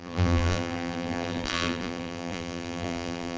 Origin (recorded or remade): remade